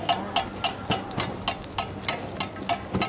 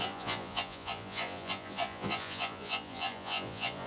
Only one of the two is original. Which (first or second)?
first